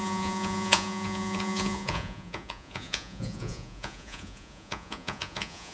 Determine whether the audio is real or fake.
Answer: fake